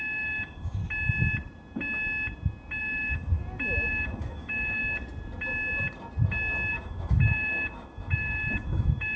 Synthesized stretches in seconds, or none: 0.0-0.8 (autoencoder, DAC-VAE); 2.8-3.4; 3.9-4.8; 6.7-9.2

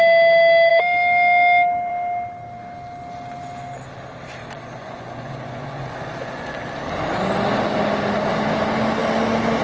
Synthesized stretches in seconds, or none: 4.4-6.5 (vocoder, Vocos)